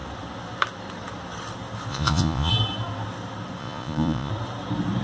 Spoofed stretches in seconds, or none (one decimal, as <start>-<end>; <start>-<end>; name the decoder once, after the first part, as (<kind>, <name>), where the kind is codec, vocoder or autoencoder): 1.9-2.5 (vocoder, Vocos); 3.6-4.3